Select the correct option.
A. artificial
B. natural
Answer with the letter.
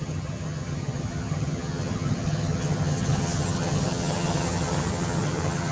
A